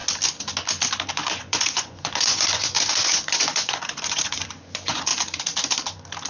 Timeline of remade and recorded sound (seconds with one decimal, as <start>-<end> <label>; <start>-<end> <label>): 0.0-1.1 recorded; 1.1-5.1 remade; 5.1-6.3 recorded